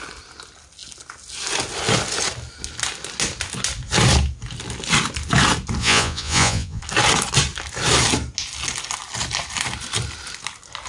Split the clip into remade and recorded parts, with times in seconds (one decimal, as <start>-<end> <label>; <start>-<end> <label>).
0.0-5.8 recorded; 5.8-6.8 remade; 6.8-10.9 recorded